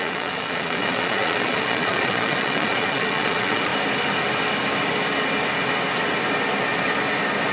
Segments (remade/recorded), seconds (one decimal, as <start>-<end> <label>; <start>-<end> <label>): 0.0-3.7 remade; 3.7-7.5 recorded